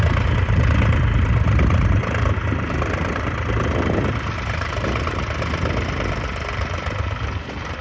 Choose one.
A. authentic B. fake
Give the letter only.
A